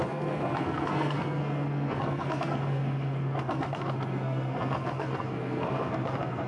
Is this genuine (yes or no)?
no